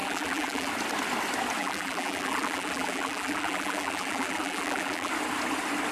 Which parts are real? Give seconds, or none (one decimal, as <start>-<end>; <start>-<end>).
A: 0.7-1.6; 5.1-5.9